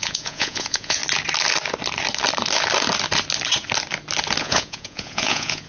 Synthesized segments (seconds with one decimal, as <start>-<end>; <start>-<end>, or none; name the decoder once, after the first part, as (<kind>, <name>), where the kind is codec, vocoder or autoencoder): 0.0-1.0 (vocoder, Vocos); 4.4-5.7